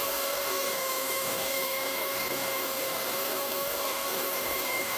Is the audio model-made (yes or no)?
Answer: yes